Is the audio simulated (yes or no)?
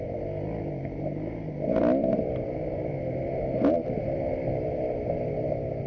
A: no